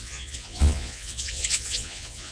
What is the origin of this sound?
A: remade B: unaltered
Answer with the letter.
A